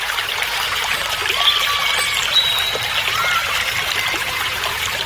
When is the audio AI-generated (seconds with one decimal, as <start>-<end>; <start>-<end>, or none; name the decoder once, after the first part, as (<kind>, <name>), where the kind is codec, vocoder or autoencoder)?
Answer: 0.0-1.0 (vocoder, BigVGAN v2); 4.1-5.1